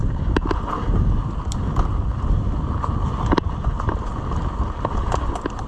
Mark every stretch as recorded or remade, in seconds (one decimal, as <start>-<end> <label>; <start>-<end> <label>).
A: 0.0-5.7 recorded